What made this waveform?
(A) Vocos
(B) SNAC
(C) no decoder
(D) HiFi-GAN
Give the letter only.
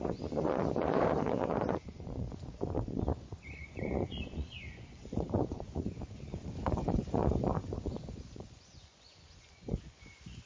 A